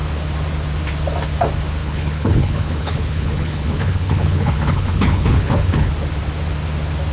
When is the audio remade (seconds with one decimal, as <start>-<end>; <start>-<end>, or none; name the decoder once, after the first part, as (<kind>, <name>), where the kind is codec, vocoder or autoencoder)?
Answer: 1.8-5.9 (codec, HILCodec)